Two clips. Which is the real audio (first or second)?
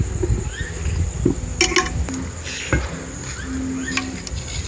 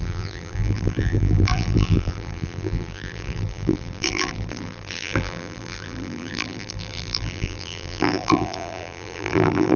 first